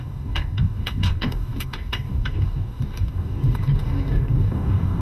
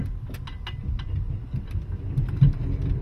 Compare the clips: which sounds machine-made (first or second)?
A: first